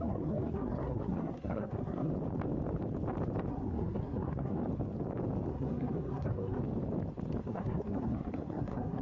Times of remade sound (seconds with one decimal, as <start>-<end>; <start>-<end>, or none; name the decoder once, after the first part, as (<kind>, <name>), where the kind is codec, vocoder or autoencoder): 0.0-2.1 (codec, SNAC); 3.5-4.6; 5.5-6.6; 7.4-9.0